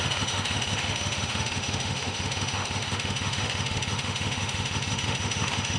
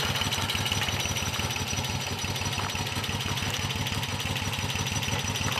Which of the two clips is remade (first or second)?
first